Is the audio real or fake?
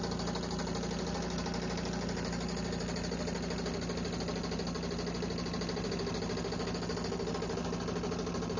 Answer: real